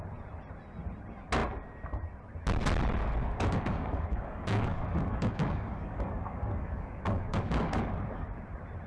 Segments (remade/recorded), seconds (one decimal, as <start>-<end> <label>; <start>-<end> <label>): 0.0-3.2 recorded; 3.2-7.9 remade; 7.9-8.9 recorded